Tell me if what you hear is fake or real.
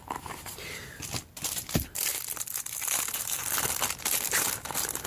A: real